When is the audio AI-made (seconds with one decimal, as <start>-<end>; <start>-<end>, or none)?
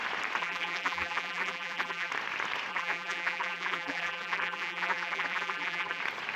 0.4-2.1; 2.7-6.0